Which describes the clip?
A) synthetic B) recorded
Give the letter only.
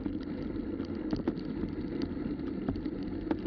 B